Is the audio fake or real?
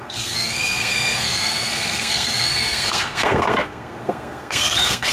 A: fake